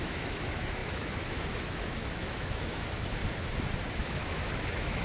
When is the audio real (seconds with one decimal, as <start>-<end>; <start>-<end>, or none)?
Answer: 3.2-3.9